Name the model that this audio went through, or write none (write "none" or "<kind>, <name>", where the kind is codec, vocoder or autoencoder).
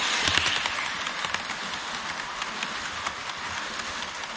none